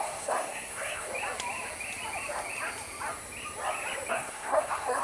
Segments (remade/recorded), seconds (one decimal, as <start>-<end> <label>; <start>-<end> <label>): 0.0-1.1 remade; 1.1-4.1 recorded; 4.1-5.0 remade